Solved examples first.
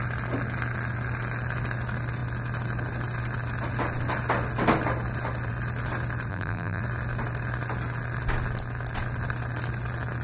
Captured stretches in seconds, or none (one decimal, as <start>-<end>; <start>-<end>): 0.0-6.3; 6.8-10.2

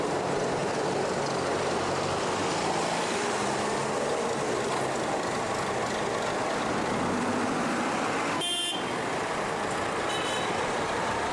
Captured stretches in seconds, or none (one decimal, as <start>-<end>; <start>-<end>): 0.6-2.6; 3.8-7.3

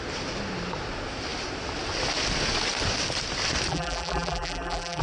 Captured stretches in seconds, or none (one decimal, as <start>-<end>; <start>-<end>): 0.0-3.7

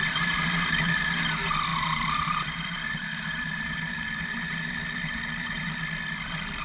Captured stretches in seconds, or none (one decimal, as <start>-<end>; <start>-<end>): 1.0-1.7; 5.7-6.6

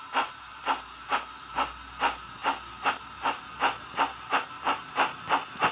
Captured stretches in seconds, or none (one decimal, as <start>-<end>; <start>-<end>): 0.0-5.7

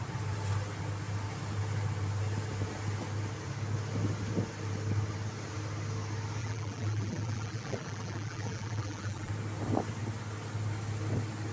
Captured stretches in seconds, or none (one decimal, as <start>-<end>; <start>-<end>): 0.0-6.4; 9.3-11.5

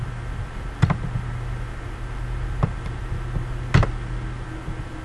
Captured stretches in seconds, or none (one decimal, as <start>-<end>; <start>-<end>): 0.0-5.0

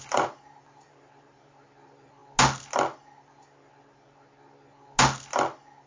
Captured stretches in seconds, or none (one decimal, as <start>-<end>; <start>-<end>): 2.2-5.9